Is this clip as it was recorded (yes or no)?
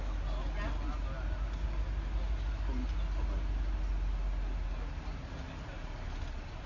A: yes